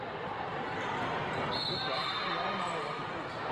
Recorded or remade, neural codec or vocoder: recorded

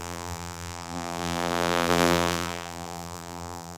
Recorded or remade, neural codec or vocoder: remade, vocoder, BigVGAN v2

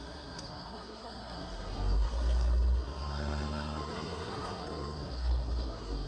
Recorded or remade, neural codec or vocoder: remade, codec, SNAC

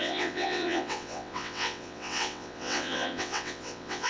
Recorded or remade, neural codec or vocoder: remade, vocoder, WaveNeXt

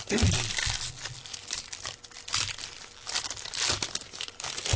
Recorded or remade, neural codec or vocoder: recorded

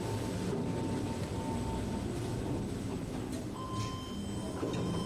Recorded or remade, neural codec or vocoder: recorded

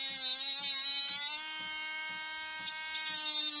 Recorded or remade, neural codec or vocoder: recorded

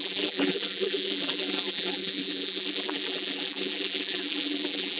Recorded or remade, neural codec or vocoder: remade, vocoder, BigVGAN v2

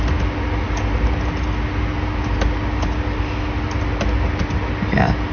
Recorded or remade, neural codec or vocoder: recorded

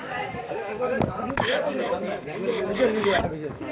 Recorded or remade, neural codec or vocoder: remade, codec, DAC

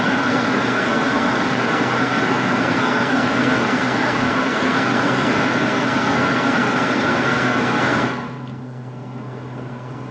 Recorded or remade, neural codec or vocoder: remade, codec, SNAC